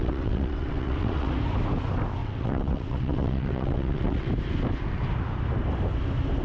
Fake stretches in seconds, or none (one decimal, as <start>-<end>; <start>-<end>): 0.0-1.3; 2.2-4.3

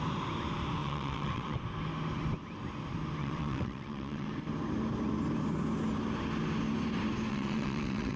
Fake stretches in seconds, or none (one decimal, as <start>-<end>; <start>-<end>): 0.8-1.6; 3.2-4.3; 7.3-8.2

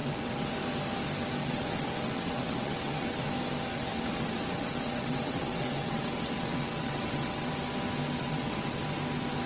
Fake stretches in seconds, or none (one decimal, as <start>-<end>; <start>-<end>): 0.0-0.5; 1.4-3.3; 3.7-7.5; 8.2-8.8

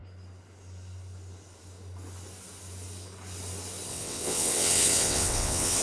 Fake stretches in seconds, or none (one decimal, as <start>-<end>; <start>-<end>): 3.9-5.8

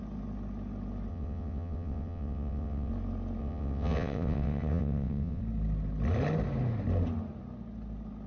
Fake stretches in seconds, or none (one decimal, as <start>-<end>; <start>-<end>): 1.1-2.9; 3.4-5.4

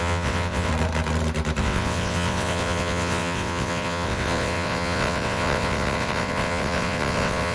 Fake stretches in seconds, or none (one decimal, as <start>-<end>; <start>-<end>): 0.0-0.7; 1.6-7.5